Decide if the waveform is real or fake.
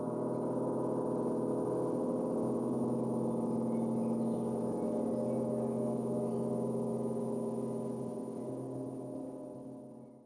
real